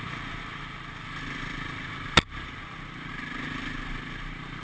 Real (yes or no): yes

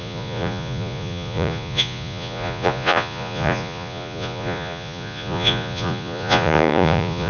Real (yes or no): no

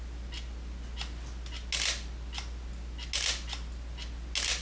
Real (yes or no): yes